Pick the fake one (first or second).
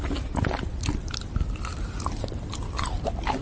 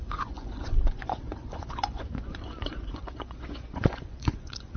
second